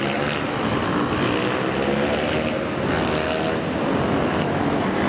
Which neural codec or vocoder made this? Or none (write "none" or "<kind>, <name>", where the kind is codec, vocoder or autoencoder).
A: none